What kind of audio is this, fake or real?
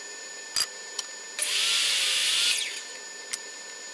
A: real